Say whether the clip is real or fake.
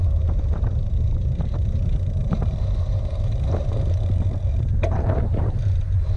fake